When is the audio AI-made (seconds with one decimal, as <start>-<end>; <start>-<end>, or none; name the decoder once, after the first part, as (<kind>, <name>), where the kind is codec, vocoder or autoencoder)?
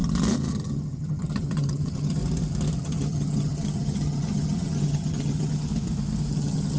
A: 0.5-2.2 (vocoder, HiFi-GAN); 2.8-5.7; 6.3-6.8